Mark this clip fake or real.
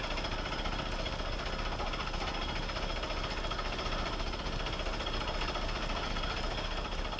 real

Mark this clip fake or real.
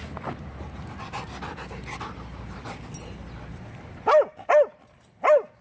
real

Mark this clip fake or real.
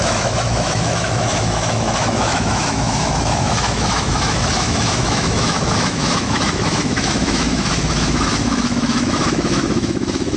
fake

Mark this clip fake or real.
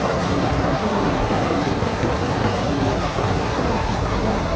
fake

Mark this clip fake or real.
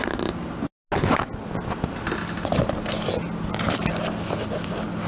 real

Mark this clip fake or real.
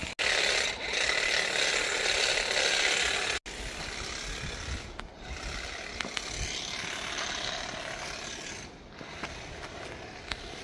real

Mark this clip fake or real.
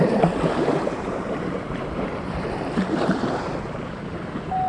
fake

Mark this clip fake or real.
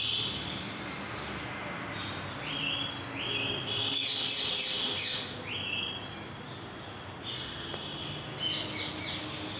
real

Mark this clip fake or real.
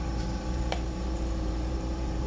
fake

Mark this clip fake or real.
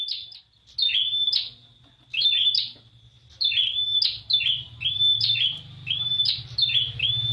real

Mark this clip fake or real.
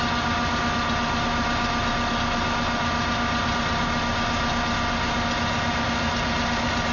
real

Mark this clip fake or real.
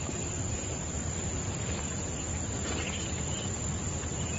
fake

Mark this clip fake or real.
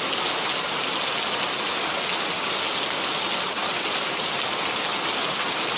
real